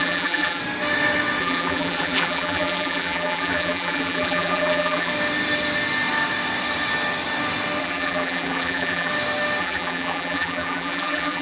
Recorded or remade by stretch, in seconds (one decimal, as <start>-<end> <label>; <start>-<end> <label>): 0.0-0.6 remade; 0.6-1.4 recorded; 1.4-5.1 remade; 5.1-7.8 recorded; 7.8-9.1 remade; 9.1-9.6 recorded; 9.6-11.4 remade